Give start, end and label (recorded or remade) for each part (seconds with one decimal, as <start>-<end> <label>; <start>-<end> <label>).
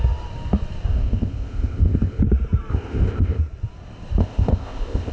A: 0.0-0.9 recorded; 0.9-2.2 remade; 2.2-2.7 recorded; 2.7-3.4 remade; 3.4-4.2 recorded; 4.2-5.1 remade